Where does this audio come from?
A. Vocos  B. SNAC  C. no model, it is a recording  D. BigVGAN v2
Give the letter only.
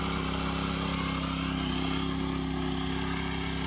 C